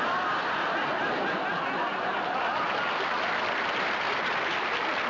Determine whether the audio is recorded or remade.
recorded